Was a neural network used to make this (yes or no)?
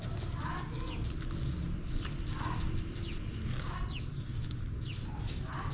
no